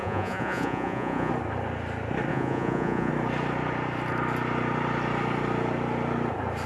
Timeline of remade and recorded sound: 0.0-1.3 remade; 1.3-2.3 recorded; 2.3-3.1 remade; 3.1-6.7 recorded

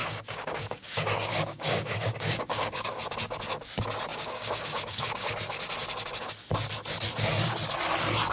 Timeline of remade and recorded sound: 0.0-2.9 remade; 2.9-4.1 recorded; 4.1-5.3 remade; 5.3-8.3 recorded

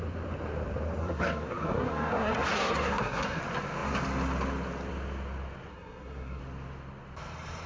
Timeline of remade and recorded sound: 0.0-1.0 recorded; 1.0-3.4 remade; 3.4-5.7 recorded; 5.7-6.4 remade; 6.4-7.7 recorded